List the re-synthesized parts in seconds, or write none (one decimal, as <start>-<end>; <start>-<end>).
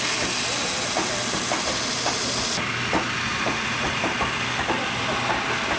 3.3-4.0